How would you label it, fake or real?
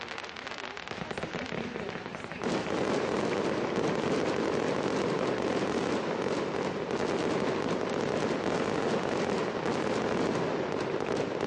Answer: real